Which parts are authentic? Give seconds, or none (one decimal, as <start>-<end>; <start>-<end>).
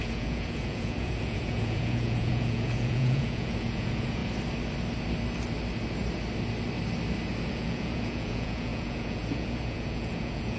4.2-7.5